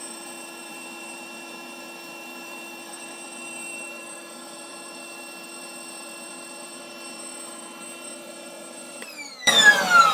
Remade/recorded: remade